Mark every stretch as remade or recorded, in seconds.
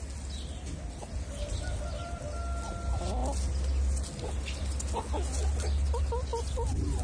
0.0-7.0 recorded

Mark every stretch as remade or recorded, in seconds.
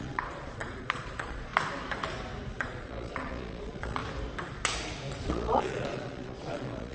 0.0-1.5 remade; 1.5-2.5 recorded; 2.5-4.0 remade; 4.0-5.2 recorded; 5.2-6.9 remade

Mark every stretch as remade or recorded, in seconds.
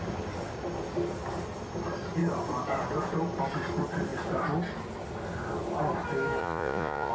0.0-6.4 recorded; 6.4-7.1 remade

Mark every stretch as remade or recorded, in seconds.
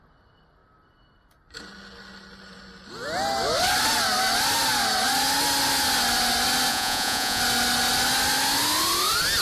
0.0-6.7 recorded; 6.7-7.4 remade; 7.4-9.4 recorded